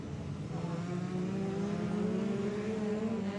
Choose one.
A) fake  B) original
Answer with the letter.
B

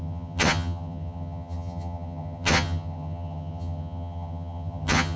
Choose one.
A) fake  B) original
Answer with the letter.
A